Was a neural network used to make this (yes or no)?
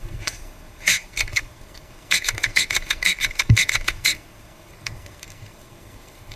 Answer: yes